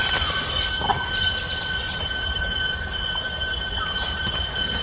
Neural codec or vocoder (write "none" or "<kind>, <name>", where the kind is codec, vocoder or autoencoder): none